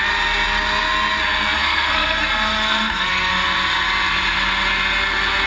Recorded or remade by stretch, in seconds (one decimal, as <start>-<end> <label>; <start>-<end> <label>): 0.0-1.6 recorded; 1.6-3.3 remade; 3.3-5.5 recorded